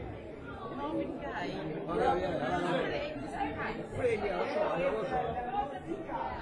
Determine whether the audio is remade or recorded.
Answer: recorded